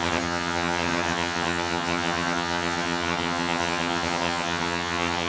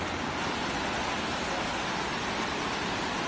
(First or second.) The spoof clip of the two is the first